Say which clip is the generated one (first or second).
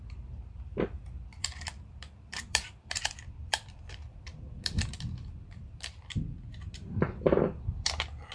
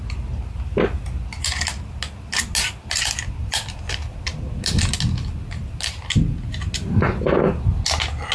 first